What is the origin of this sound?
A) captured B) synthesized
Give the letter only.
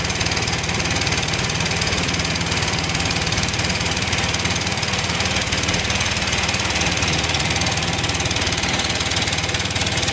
B